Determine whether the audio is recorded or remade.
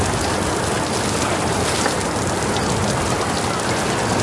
recorded